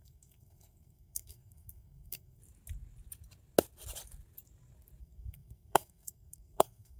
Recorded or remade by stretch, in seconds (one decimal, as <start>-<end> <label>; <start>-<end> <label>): 0.0-2.4 remade; 2.4-5.0 recorded; 5.0-7.0 remade